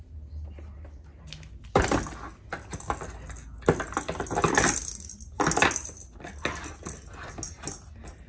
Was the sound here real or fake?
real